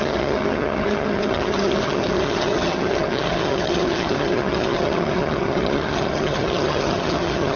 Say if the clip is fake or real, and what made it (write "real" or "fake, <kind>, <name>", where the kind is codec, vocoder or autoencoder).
fake, vocoder, HiFi-GAN